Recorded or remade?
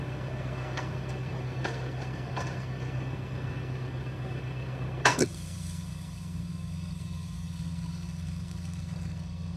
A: remade